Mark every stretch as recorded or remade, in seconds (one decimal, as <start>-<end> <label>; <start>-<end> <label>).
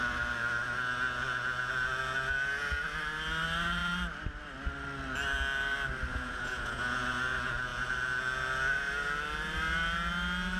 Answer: 0.0-6.1 recorded; 6.1-7.0 remade; 7.0-10.6 recorded